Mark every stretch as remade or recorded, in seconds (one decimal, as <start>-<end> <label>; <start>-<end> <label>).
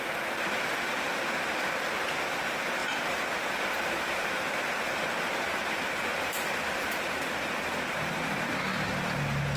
0.0-2.8 recorded; 2.8-7.3 remade; 7.3-9.6 recorded